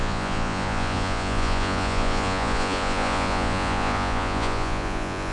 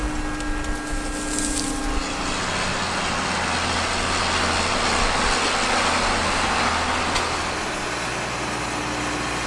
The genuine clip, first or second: second